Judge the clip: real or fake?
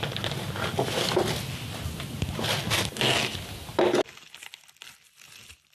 real